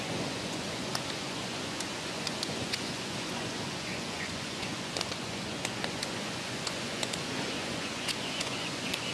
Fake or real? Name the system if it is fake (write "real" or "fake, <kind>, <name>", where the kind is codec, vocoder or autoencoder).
fake, vocoder, Vocos